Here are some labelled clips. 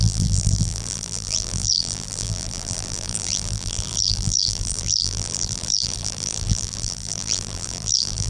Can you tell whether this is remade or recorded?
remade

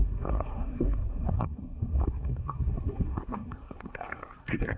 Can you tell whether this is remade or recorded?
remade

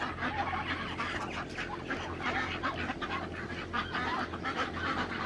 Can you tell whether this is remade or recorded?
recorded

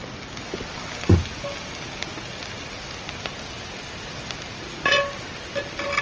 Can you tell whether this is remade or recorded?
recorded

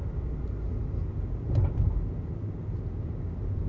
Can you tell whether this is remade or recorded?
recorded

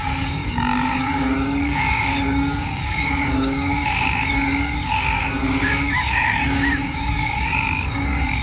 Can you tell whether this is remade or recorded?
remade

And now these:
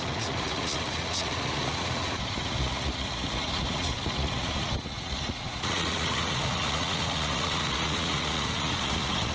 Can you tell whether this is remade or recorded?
remade